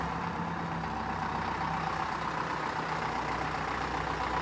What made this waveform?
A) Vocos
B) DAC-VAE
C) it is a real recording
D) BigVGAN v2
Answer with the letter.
C